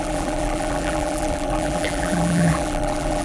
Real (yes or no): no